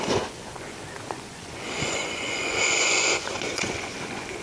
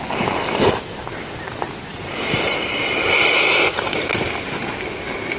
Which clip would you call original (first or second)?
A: second